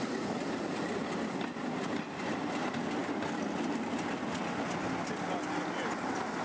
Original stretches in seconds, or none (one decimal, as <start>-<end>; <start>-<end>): 0.0-6.4